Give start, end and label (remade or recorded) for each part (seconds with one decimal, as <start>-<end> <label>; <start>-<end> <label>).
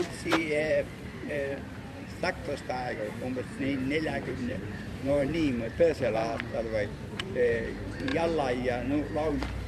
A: 0.0-2.4 remade; 2.4-4.2 recorded; 4.2-6.2 remade; 6.2-7.2 recorded; 7.2-8.1 remade; 8.1-9.1 recorded; 9.1-9.7 remade